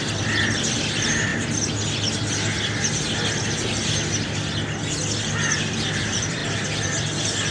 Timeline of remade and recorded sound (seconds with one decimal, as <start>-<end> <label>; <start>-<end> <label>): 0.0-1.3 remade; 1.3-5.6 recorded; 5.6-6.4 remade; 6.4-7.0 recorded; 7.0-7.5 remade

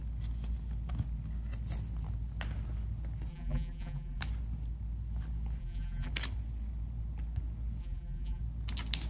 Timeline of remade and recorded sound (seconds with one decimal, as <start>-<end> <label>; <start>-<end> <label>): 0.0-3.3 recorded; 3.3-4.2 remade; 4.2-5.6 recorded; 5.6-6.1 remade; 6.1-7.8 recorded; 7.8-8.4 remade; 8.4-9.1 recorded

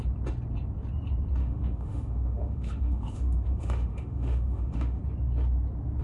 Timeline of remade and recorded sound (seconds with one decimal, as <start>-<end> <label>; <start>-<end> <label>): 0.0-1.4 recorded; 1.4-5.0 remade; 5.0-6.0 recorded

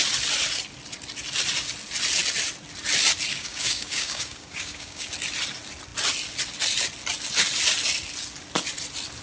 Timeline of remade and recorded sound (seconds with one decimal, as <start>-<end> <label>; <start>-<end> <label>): 0.0-3.3 recorded; 3.3-5.1 remade; 5.1-9.2 recorded

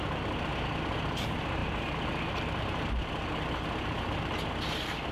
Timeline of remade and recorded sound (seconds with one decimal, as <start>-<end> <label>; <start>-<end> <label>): 0.0-5.1 recorded